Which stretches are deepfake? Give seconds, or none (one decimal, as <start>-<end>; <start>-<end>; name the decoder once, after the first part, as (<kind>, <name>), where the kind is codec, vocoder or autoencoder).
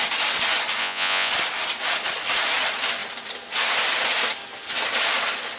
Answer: 0.8-1.3 (vocoder, Vocos)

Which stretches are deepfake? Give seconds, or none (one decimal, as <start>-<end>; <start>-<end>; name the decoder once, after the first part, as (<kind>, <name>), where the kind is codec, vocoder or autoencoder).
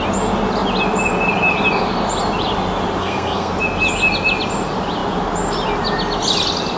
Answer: 3.0-3.5 (codec, SNAC)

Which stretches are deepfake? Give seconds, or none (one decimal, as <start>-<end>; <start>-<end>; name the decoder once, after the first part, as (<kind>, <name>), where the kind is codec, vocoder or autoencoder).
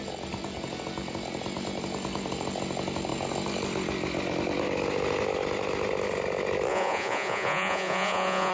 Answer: 6.7-8.5 (vocoder, Vocos)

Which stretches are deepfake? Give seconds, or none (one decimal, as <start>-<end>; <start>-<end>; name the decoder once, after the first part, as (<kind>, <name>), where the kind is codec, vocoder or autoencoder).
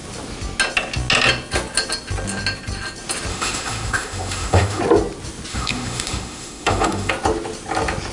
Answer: 3.3-4.8 (autoencoder, DAC-VAE); 5.5-7.1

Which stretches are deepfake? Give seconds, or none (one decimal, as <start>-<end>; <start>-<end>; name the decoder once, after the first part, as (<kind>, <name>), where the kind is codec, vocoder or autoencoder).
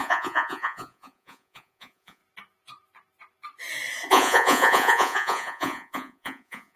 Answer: 0.0-2.2 (vocoder, Vocos); 4.1-6.8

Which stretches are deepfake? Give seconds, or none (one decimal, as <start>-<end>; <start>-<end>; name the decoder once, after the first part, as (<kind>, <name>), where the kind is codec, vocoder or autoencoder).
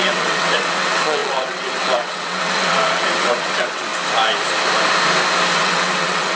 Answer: 0.0-3.9 (vocoder, WaveNeXt); 5.6-6.4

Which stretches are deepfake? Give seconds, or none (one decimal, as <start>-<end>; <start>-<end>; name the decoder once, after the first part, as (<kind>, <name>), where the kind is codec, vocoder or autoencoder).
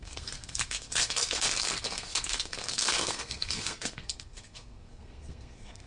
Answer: 0.0-5.9 (codec, SNAC)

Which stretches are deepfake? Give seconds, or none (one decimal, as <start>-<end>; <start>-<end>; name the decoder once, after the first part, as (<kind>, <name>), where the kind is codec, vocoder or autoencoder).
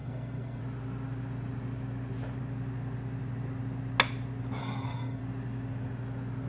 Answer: 0.0-0.6 (codec, SNAC); 4.6-5.2